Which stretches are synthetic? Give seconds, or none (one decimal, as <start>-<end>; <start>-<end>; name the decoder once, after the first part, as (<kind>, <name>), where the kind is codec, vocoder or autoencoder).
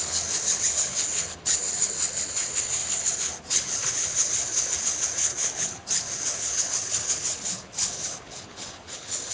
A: 0.0-9.3 (codec, HILCodec)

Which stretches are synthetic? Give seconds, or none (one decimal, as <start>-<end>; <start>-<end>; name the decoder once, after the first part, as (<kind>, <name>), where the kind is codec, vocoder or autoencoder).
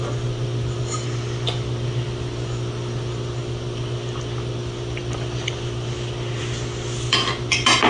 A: none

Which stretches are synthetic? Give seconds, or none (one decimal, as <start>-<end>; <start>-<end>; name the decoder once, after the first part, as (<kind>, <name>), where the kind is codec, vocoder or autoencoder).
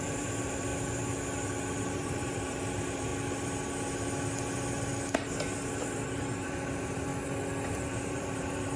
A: 0.0-0.7 (vocoder, BigVGAN v2); 1.8-3.1; 5.7-7.1; 7.7-8.8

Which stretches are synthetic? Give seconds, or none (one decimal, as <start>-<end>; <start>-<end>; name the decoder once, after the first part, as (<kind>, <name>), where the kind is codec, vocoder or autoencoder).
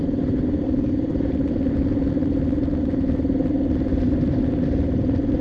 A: 1.1-2.3 (vocoder, BigVGAN v2)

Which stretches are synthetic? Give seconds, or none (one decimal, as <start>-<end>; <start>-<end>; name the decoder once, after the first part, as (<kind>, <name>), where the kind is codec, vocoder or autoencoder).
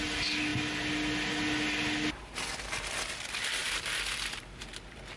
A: none